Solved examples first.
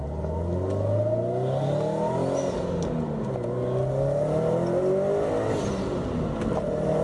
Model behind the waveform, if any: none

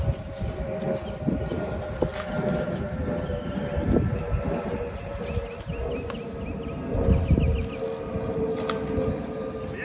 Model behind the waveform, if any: none